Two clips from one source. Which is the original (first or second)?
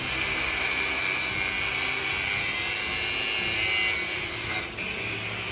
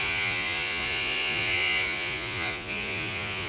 first